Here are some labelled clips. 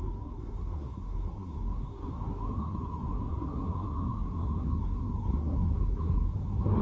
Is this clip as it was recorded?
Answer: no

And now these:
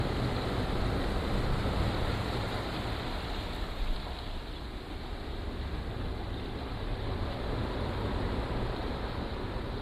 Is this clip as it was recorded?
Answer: yes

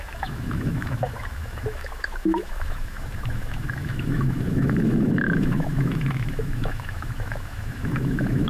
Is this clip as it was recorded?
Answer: no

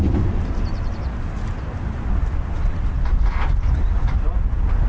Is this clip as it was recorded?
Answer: yes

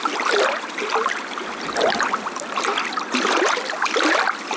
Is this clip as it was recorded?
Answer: yes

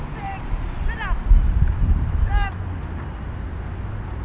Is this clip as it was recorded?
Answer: yes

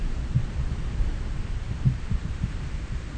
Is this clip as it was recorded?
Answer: no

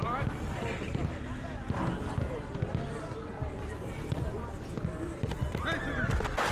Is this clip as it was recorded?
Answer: yes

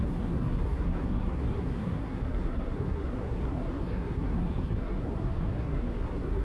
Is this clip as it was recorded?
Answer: no